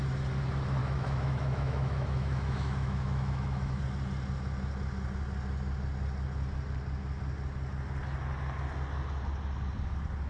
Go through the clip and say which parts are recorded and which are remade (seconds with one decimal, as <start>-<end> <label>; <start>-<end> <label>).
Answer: 0.0-0.8 recorded; 0.8-3.8 remade; 3.8-10.3 recorded